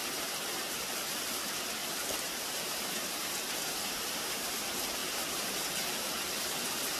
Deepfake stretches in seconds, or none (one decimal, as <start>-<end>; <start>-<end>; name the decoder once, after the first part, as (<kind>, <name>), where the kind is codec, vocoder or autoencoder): 1.8-4.6 (vocoder, BigVGAN v2); 5.0-6.4